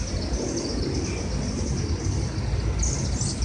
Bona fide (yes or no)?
yes